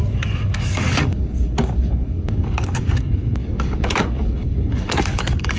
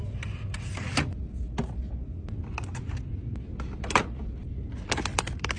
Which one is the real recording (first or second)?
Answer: second